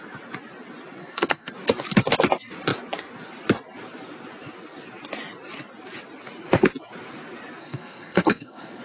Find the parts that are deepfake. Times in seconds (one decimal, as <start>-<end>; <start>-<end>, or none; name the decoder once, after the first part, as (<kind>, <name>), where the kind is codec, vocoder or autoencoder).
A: 1.0-1.5 (codec, SNAC); 7.6-8.8